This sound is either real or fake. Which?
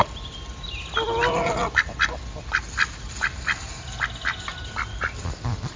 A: real